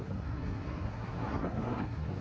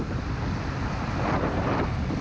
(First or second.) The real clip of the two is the second